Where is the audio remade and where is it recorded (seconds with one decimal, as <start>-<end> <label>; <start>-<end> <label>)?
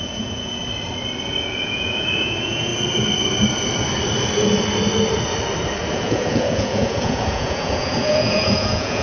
0.0-0.6 remade; 0.6-1.5 recorded; 1.5-2.7 remade; 2.7-5.9 recorded; 5.9-9.0 remade